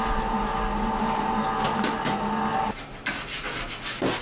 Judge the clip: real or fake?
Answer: real